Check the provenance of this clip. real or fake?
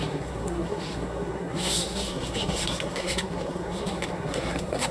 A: fake